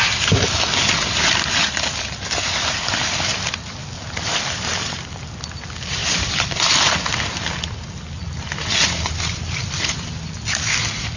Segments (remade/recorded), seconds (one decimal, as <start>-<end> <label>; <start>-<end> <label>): 0.0-11.2 recorded